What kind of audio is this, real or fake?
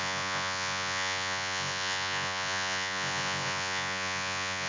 fake